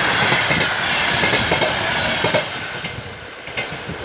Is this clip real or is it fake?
real